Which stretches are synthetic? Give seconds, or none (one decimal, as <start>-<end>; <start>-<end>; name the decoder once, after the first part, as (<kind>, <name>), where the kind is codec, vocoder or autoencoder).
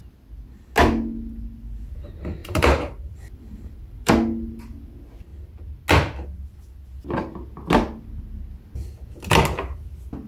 2.4-4.1 (vocoder, BigVGAN v2)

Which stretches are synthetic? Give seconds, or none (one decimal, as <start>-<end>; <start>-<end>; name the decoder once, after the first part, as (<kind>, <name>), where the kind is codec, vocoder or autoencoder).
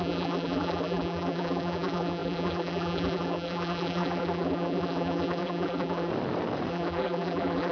0.0-6.1 (vocoder, BigVGAN v2); 6.7-7.7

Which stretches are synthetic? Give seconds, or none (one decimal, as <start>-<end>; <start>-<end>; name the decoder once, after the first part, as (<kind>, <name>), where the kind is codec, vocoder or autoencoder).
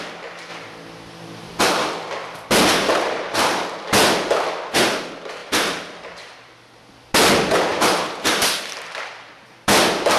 5.4-6.6 (vocoder, BigVGAN v2); 7.7-10.2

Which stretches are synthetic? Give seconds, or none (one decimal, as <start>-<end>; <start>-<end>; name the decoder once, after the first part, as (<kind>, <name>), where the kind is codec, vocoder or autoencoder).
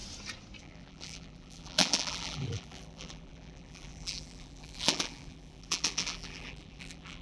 0.6-7.2 (vocoder, BigVGAN v2)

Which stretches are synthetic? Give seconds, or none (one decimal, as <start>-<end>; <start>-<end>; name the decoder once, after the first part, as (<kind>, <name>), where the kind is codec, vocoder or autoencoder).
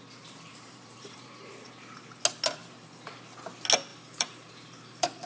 0.5-1.5 (vocoder, BigVGAN v2); 2.6-3.2; 3.9-5.3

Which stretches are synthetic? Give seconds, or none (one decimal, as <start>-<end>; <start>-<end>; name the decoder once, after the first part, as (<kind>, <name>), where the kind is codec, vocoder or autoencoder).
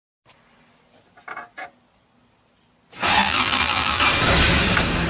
3.2-4.0 (vocoder, BigVGAN v2)